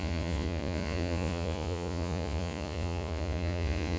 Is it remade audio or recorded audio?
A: remade